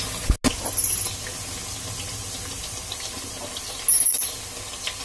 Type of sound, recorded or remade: recorded